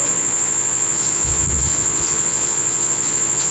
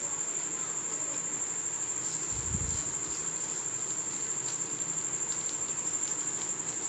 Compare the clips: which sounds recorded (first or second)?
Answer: second